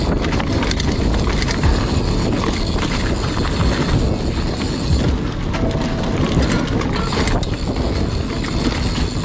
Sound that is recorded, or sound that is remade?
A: recorded